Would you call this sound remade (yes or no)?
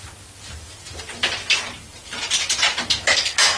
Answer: no